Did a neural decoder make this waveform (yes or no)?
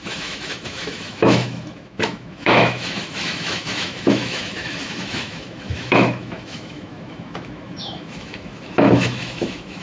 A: yes